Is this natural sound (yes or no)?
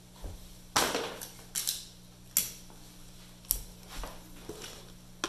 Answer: yes